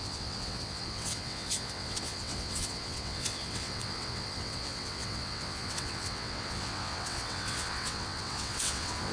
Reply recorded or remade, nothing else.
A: remade